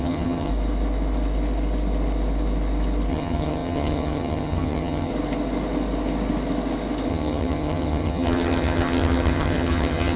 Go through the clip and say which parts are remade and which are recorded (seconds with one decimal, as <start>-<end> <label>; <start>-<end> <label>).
0.0-0.5 remade; 0.5-3.1 recorded; 3.1-5.1 remade; 5.1-7.1 recorded; 7.1-10.2 remade